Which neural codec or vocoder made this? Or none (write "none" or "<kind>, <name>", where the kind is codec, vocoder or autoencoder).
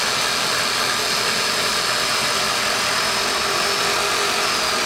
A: none